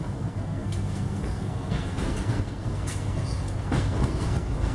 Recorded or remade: remade